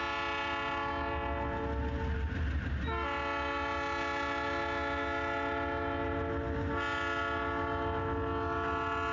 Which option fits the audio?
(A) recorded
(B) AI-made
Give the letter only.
A